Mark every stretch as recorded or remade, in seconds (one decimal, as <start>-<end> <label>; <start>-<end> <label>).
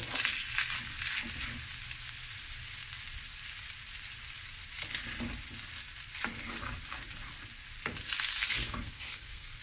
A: 0.0-8.4 recorded; 8.4-9.6 remade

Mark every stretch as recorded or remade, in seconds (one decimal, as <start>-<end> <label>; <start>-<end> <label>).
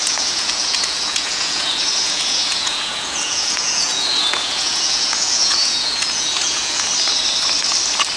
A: 0.0-6.9 remade; 6.9-8.2 recorded